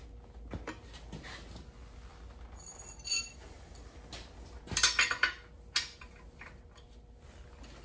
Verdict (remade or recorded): recorded